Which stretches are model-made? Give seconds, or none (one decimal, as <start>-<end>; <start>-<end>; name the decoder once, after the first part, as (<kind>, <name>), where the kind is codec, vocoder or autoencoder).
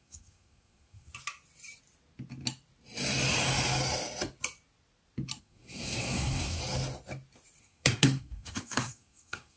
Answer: 0.0-1.1 (codec, SNAC); 5.4-6.6; 7.6-9.6